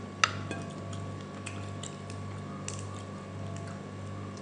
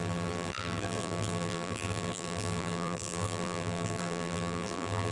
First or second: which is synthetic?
second